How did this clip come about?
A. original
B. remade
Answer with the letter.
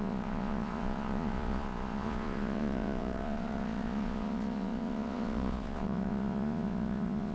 B